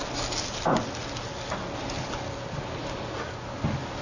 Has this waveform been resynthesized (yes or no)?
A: no